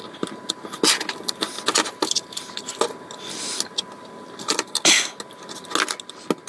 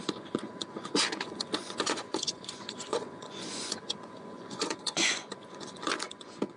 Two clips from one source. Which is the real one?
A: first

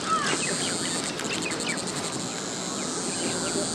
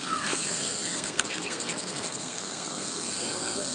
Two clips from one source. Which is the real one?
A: first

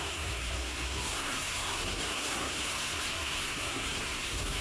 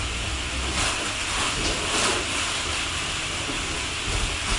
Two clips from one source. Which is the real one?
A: second